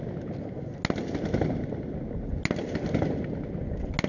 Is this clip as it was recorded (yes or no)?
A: yes